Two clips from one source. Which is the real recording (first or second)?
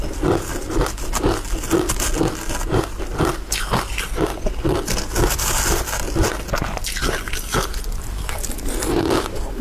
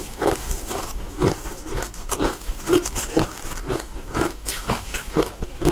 first